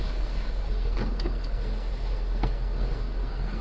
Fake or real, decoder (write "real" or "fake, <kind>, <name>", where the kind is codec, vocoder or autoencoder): fake, codec, SNAC